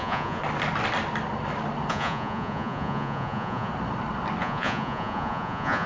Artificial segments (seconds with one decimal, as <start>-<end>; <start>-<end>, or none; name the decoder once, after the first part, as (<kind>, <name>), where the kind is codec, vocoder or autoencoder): 0.0-0.4 (vocoder, Vocos); 1.9-3.7; 4.4-5.9